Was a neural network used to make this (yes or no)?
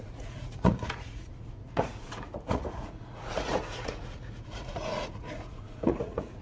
yes